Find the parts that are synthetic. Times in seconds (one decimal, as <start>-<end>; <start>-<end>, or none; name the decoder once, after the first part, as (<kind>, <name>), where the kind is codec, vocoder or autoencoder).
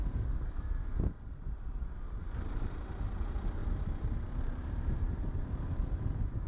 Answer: 3.6-6.5 (vocoder, BigVGAN v2)